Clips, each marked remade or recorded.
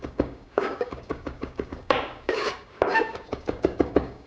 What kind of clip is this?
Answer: remade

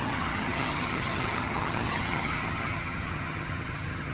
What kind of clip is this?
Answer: remade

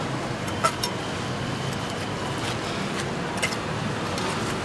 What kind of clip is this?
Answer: recorded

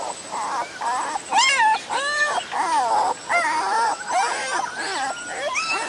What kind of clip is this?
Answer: recorded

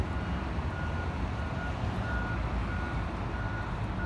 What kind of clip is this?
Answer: recorded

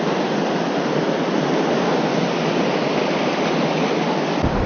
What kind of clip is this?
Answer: recorded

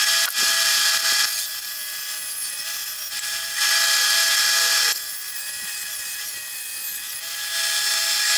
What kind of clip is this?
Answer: recorded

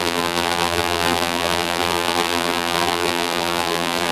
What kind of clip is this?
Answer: remade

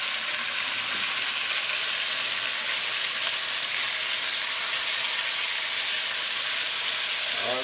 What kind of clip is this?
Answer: recorded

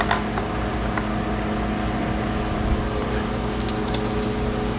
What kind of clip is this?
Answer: recorded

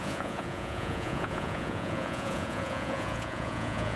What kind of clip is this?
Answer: remade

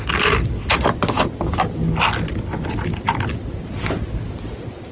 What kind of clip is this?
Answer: recorded